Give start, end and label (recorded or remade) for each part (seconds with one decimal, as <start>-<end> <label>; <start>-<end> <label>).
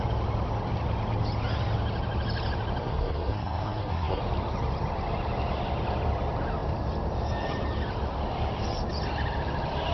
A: 0.0-2.8 recorded; 2.8-4.2 remade; 4.2-9.9 recorded